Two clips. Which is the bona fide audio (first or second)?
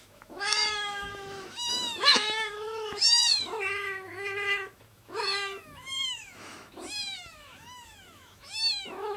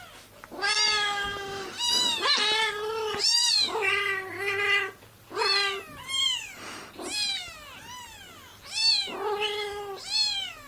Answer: second